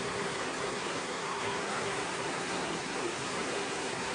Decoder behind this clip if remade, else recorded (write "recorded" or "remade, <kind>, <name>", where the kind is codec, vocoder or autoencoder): remade, codec, SNAC